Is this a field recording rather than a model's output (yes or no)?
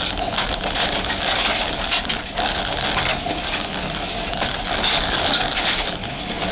no